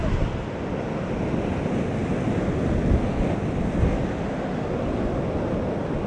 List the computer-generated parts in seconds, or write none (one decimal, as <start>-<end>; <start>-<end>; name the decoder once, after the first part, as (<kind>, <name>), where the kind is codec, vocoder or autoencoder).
none